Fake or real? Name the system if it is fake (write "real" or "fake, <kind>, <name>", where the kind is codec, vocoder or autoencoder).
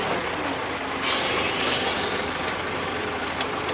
real